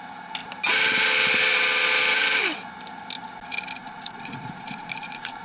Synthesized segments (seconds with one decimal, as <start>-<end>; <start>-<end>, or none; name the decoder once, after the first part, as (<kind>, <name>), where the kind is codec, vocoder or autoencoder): 3.8-5.4 (vocoder, Vocos)